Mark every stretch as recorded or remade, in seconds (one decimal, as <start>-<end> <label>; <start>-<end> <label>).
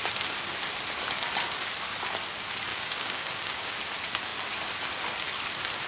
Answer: 0.0-2.7 recorded; 2.7-3.8 remade; 3.8-5.9 recorded